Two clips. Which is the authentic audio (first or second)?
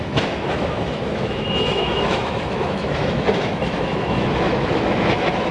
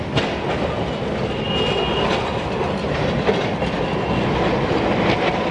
second